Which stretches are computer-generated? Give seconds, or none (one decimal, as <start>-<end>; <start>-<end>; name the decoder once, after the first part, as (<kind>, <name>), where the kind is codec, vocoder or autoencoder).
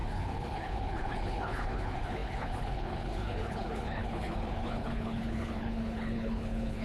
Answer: 0.0-6.8 (codec, HILCodec)